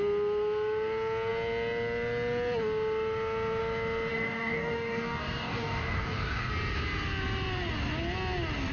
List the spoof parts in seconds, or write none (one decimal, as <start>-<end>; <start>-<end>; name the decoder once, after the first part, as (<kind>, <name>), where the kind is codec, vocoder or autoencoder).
4.1-6.5 (codec, DAC)